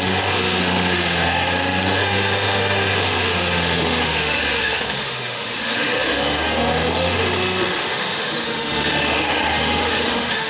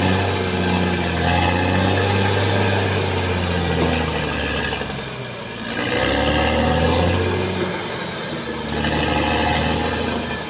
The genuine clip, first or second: second